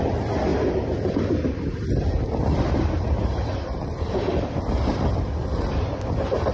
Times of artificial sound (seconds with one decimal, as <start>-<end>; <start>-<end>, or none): 0.5-1.1; 5.4-6.5

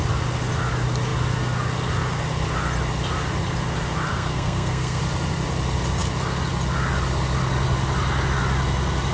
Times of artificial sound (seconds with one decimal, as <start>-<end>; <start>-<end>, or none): 4.1-5.0

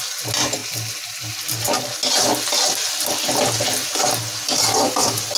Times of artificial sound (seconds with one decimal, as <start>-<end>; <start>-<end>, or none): none

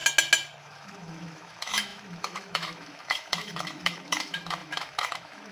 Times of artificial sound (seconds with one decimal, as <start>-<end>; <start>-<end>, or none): 0.6-5.5

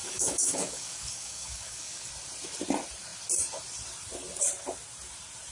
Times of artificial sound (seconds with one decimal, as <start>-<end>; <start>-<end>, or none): 0.0-2.1

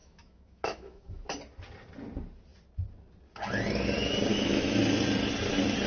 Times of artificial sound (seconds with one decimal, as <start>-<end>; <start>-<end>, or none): 0.0-1.2; 4.3-4.8

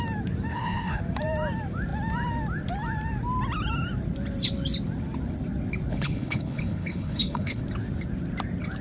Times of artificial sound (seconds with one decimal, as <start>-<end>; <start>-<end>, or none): 0.5-1.0; 5.9-7.6